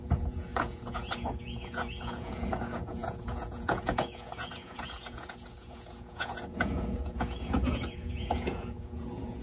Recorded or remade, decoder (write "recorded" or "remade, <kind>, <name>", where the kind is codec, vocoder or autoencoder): remade, vocoder, Vocos